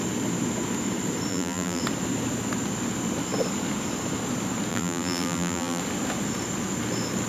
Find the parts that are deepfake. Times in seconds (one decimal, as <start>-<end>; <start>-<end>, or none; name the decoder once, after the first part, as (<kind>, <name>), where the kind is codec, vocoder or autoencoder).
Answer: 1.3-1.8 (vocoder, BigVGAN v2); 4.7-5.8